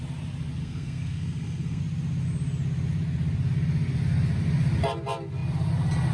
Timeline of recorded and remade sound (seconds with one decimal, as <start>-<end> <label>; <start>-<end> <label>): 0.0-0.6 recorded; 0.6-1.8 remade; 1.8-6.1 recorded